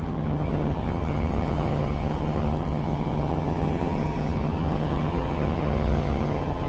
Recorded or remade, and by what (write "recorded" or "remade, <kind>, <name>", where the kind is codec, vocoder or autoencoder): remade, vocoder, HiFi-GAN